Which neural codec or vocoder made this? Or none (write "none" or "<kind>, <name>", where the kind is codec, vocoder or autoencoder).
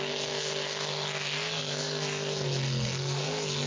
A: codec, SNAC